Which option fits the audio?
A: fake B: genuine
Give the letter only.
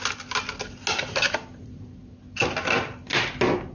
B